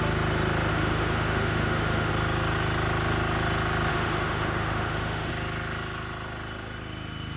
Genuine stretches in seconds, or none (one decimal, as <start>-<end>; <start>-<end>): 0.0-0.7; 2.1-3.9; 5.3-7.4